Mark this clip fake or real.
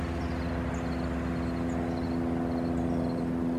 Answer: real